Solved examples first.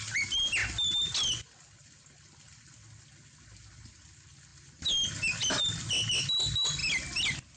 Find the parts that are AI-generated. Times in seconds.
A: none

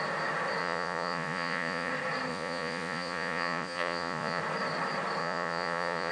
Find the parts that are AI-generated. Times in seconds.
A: 0.6-1.9 (vocoder, Vocos); 2.3-4.4; 5.2-6.1

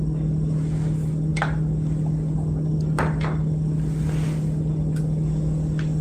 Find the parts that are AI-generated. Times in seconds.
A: none

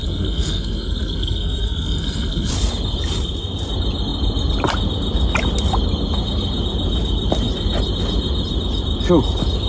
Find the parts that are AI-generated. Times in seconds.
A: 0.0-2.5 (codec, SNAC)

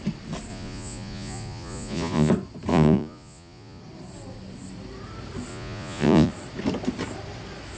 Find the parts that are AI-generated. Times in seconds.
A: 0.5-2.3 (vocoder, Vocos); 2.7-3.8; 5.5-6.3